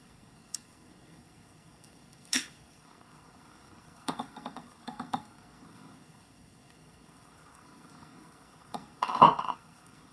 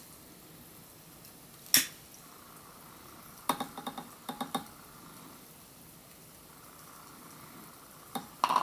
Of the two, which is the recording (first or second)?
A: second